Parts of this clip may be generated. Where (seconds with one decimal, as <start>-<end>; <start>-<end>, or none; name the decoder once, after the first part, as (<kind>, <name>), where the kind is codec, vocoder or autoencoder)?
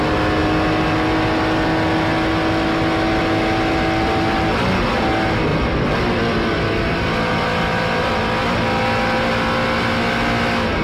5.5-8.1 (vocoder, BigVGAN v2)